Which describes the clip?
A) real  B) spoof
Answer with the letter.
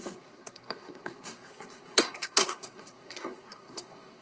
B